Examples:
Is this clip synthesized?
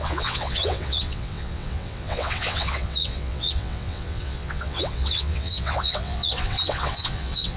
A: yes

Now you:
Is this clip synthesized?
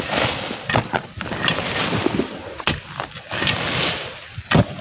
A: no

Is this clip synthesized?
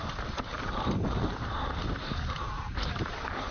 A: yes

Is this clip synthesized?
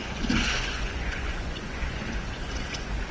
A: yes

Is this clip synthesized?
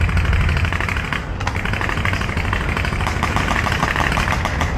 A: no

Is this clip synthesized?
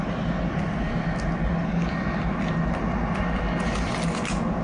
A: no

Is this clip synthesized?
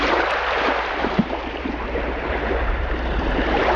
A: yes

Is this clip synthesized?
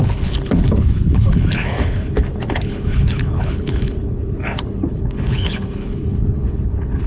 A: yes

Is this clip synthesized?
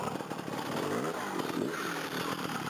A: no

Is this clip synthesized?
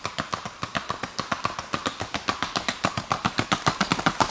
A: no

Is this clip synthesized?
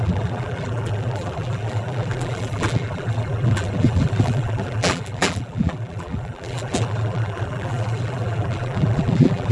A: yes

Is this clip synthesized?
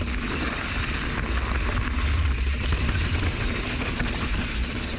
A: no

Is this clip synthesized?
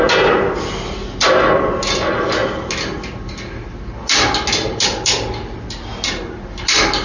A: no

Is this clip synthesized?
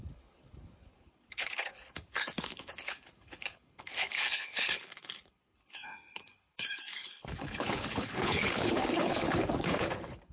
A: yes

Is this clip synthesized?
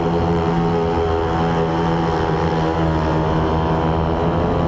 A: no